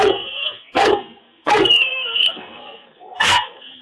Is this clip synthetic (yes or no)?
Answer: yes